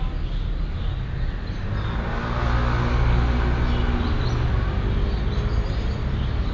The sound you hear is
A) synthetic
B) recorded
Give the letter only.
B